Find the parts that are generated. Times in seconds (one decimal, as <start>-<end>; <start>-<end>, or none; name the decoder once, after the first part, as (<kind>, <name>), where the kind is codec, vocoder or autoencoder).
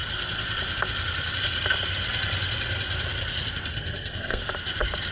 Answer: 3.7-4.4 (codec, SNAC)